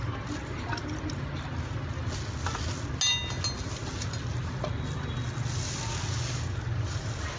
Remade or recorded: recorded